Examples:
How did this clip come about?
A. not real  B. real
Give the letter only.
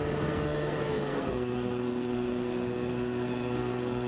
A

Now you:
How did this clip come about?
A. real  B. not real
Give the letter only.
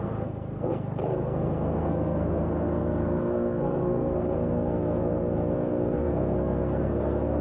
B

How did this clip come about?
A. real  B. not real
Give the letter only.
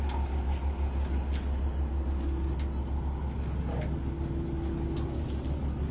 A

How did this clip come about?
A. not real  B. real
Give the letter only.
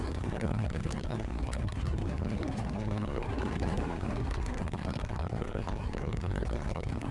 A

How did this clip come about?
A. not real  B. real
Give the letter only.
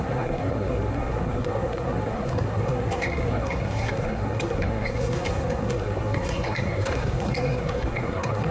A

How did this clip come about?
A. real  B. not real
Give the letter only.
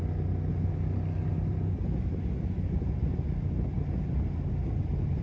A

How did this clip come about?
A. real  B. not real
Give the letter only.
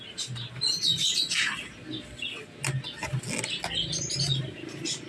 A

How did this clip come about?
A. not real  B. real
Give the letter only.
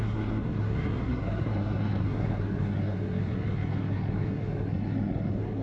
A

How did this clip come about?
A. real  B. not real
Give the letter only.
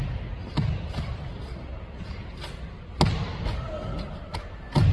A